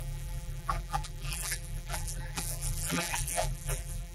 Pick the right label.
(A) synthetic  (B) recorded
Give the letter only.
A